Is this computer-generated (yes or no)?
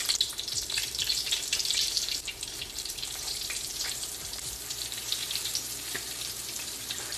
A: yes